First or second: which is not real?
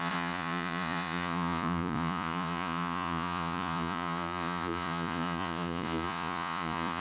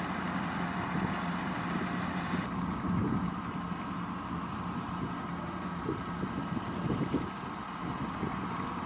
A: first